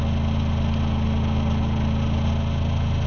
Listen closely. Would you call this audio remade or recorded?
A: recorded